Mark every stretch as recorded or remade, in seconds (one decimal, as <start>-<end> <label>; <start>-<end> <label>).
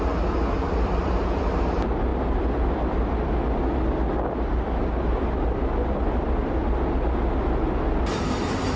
0.0-8.8 recorded